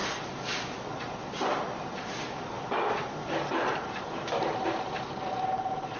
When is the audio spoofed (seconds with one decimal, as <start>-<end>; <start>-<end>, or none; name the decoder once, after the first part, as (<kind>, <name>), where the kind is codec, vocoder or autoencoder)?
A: none